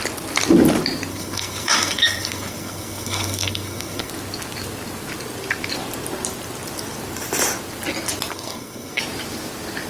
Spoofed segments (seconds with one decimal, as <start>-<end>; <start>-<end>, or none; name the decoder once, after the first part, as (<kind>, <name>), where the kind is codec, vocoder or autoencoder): 1.1-4.1 (codec, SNAC); 8.3-9.0